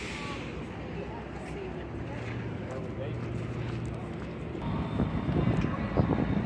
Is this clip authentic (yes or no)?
yes